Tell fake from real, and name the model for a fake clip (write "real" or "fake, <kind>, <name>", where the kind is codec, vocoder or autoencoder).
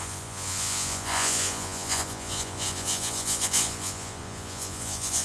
fake, vocoder, Vocos